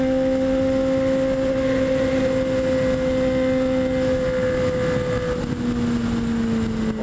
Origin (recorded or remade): recorded